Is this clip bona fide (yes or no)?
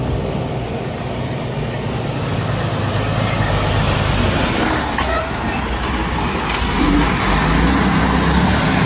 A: yes